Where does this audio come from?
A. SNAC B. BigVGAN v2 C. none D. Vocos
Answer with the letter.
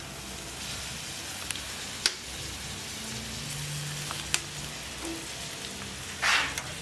C